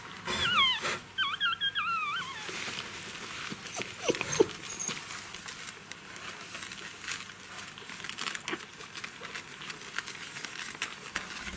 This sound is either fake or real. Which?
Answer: real